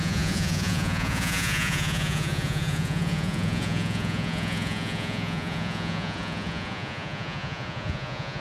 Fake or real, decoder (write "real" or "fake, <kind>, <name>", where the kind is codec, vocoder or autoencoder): fake, vocoder, Vocos